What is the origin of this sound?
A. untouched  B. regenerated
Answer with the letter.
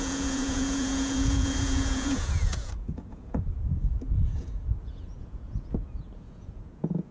B